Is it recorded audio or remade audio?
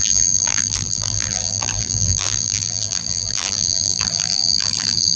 remade